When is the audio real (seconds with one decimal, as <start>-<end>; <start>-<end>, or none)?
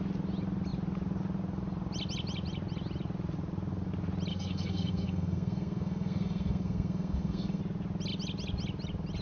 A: 0.0-4.3; 7.6-9.2